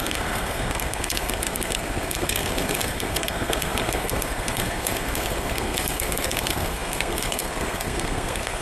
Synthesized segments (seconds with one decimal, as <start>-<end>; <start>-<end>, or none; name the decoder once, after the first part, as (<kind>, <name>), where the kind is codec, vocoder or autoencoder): 0.0-8.6 (codec, SNAC)